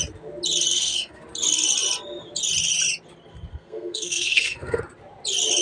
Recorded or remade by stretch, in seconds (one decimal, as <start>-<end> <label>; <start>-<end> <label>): 0.0-0.7 recorded; 0.7-1.2 remade; 1.2-3.5 recorded; 3.5-4.8 remade; 4.8-5.6 recorded